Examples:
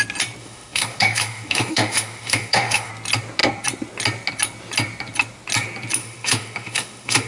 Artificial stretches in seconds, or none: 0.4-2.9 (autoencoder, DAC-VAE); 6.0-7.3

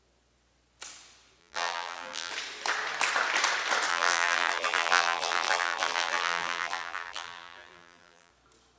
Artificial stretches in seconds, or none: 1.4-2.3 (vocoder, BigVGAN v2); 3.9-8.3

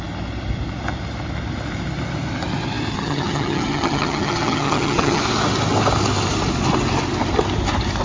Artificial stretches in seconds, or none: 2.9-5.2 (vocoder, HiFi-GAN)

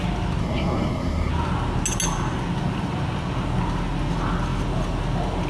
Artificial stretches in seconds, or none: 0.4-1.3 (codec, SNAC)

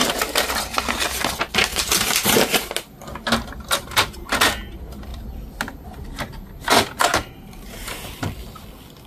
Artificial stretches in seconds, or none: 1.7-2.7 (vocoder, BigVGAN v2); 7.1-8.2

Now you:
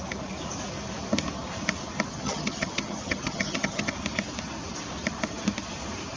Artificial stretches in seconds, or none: 2.1-3.9 (vocoder, HiFi-GAN)

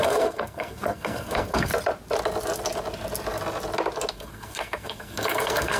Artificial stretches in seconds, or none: 0.0-1.7 (codec, SNAC); 4.1-5.8